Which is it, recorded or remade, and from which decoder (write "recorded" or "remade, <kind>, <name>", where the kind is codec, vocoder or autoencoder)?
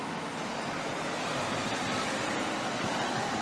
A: recorded